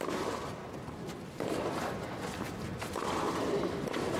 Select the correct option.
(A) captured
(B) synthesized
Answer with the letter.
A